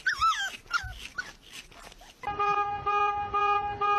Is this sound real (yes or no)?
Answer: yes